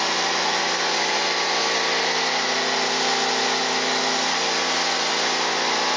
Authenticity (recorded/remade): recorded